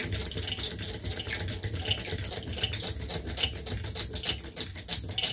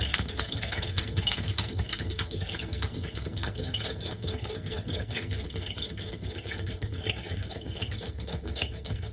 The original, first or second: first